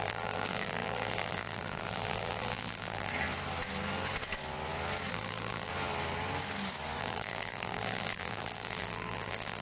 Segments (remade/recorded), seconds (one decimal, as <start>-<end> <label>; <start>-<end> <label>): 0.0-3.1 remade; 3.1-5.1 recorded; 5.1-5.7 remade; 5.7-7.0 recorded; 7.0-9.6 remade